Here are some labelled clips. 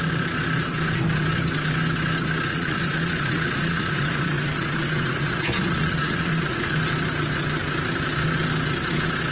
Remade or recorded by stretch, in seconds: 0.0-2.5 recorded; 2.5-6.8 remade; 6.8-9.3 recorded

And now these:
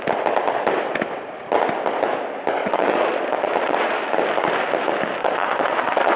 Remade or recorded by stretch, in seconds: 0.0-2.6 recorded; 2.6-4.0 remade; 4.0-5.2 recorded; 5.2-6.2 remade

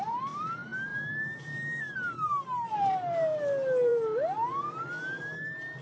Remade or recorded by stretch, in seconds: 0.0-5.8 recorded

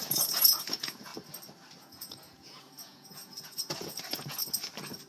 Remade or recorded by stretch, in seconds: 0.0-1.1 remade; 1.1-1.8 recorded; 1.8-4.4 remade; 4.4-5.1 recorded

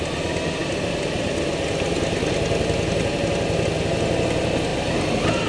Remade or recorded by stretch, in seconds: 0.0-5.5 recorded

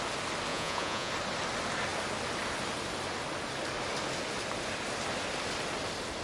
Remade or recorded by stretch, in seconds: 0.0-0.5 recorded; 0.5-1.1 remade; 1.1-6.2 recorded